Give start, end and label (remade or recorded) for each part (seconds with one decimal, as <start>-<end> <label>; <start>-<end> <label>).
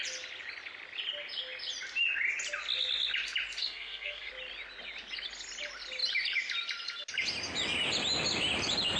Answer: 0.0-3.6 recorded; 3.6-4.3 remade; 4.3-9.0 recorded